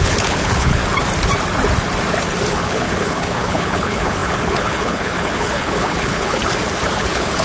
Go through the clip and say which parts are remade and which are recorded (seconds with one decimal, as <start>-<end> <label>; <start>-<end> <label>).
0.0-0.8 remade; 0.8-2.5 recorded; 2.5-6.4 remade; 6.4-7.0 recorded; 7.0-7.4 remade